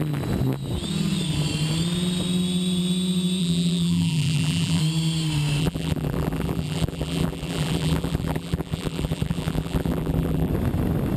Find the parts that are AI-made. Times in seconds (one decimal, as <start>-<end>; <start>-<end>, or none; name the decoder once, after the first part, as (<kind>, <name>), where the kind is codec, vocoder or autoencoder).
3.4-4.8 (vocoder, BigVGAN v2); 5.6-10.5